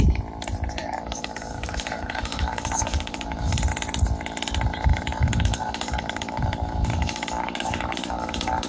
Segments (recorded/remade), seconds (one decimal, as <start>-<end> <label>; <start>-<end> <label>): 0.0-0.8 recorded; 0.8-3.5 remade; 3.5-4.9 recorded; 4.9-8.7 remade